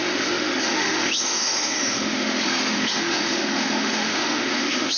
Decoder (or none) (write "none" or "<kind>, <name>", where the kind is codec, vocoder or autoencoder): autoencoder, DAC-VAE